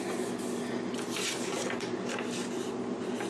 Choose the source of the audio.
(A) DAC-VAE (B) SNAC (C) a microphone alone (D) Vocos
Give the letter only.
C